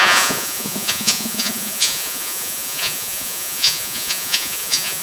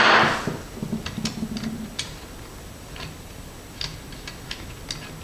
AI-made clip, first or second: first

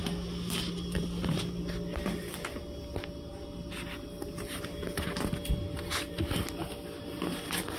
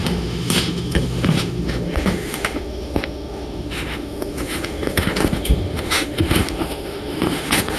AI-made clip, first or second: second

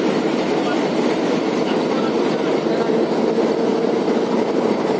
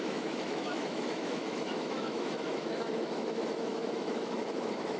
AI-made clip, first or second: second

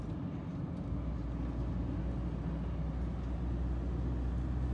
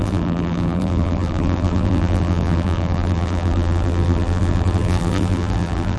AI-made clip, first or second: second